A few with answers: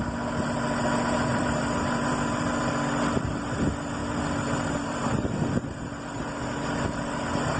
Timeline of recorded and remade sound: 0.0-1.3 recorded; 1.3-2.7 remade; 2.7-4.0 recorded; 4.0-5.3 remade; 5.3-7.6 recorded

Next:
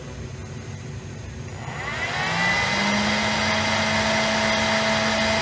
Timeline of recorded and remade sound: 0.0-5.4 recorded

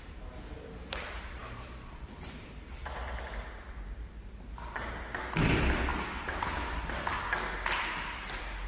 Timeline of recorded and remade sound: 0.0-1.4 recorded; 1.4-3.2 remade; 3.2-5.9 recorded; 5.9-6.9 remade; 6.9-8.7 recorded

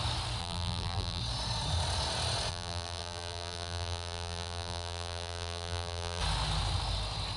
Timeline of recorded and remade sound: 0.0-0.4 recorded; 0.4-1.2 remade; 1.2-2.5 recorded; 2.5-6.2 remade; 6.2-7.4 recorded

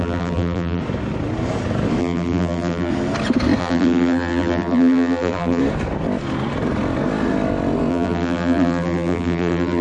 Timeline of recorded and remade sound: 0.0-0.8 remade; 0.8-2.0 recorded; 2.0-2.9 remade; 2.9-3.6 recorded; 3.6-5.6 remade; 5.6-7.9 recorded; 7.9-9.8 remade

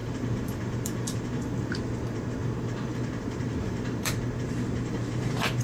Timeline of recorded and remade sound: 0.0-1.8 remade; 1.8-2.4 recorded; 2.4-5.6 remade

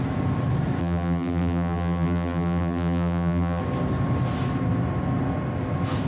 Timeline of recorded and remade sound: 0.0-0.8 recorded; 0.8-3.6 remade; 3.6-6.1 recorded